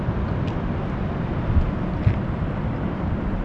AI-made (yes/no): no